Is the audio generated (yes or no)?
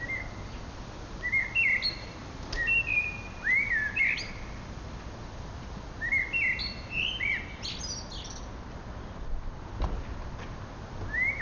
no